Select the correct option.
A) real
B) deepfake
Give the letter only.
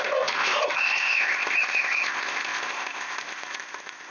B